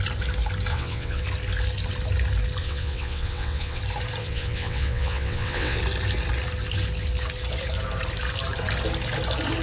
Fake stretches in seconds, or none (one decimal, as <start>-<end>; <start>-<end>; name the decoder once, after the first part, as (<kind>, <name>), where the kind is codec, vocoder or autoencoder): 0.7-1.2 (vocoder, WaveNeXt); 2.6-3.8; 4.2-5.8